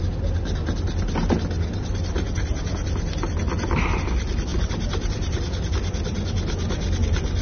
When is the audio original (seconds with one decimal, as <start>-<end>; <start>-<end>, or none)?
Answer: 0.0-7.4

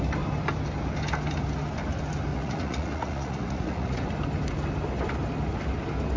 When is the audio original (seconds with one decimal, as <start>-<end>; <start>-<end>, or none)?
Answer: 0.0-2.3; 4.0-6.2